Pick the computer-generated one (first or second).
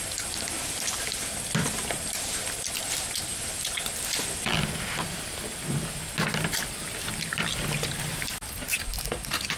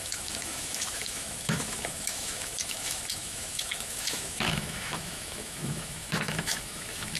second